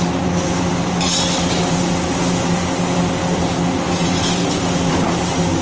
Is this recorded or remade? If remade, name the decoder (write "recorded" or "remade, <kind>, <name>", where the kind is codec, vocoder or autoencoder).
recorded